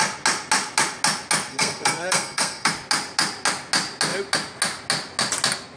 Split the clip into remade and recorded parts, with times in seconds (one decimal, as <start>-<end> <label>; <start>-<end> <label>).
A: 0.0-1.5 recorded; 1.5-2.7 remade; 2.7-5.8 recorded